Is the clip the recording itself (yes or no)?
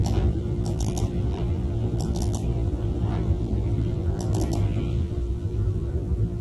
no